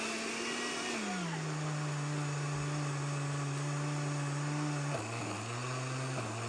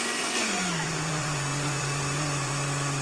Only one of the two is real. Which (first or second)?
first